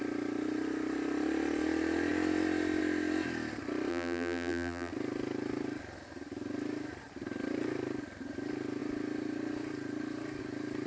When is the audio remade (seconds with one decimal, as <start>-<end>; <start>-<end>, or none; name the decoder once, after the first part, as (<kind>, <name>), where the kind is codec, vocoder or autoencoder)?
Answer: 3.9-4.9 (vocoder, BigVGAN v2)